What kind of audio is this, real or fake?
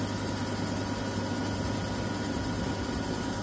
real